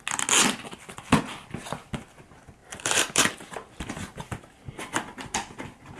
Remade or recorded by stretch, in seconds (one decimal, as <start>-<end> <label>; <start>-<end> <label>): 0.0-2.6 recorded; 2.6-3.3 remade; 3.3-6.0 recorded